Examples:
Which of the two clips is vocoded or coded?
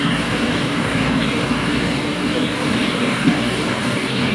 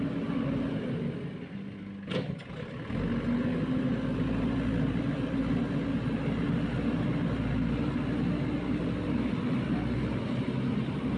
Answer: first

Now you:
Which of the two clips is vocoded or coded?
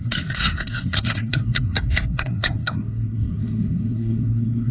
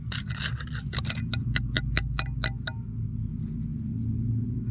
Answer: first